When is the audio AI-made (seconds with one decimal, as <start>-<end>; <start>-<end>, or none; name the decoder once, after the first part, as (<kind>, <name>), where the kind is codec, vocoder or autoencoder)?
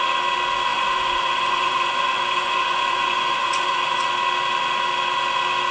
0.7-4.0 (vocoder, Vocos)